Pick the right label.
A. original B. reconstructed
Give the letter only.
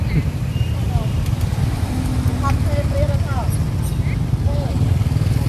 A